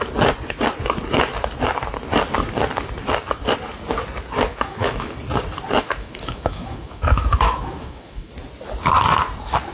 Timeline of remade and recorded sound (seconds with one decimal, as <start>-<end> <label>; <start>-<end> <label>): 0.0-4.5 recorded; 4.5-5.1 remade; 5.1-5.8 recorded; 5.8-8.3 remade; 8.3-9.7 recorded